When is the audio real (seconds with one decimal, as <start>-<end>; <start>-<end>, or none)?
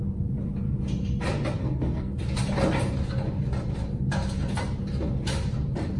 0.0-1.6; 2.1-6.0